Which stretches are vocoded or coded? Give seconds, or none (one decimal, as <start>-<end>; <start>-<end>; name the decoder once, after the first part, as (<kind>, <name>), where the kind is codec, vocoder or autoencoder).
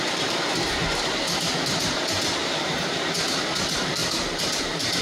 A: 0.0-5.0 (vocoder, BigVGAN v2)